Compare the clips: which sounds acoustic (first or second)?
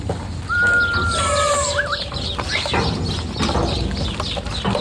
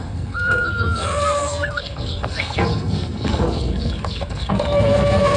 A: first